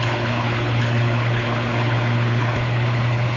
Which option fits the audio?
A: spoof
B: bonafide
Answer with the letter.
A